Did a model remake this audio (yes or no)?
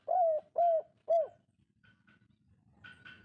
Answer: no